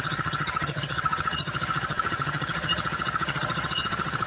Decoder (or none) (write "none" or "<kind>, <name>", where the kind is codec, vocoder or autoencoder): vocoder, HiFi-GAN